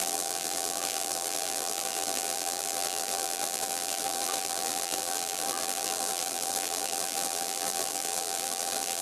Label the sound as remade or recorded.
remade